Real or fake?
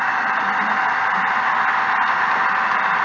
real